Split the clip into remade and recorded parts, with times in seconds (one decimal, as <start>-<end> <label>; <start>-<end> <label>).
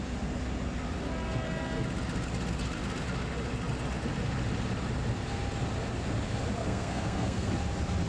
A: 0.0-6.6 recorded; 6.6-7.5 remade; 7.5-8.1 recorded